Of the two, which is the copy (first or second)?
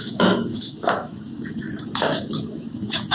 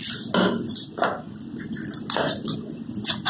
first